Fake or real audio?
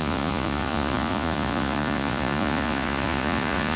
fake